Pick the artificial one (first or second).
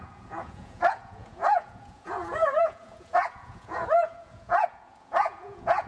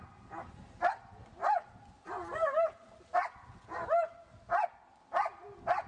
first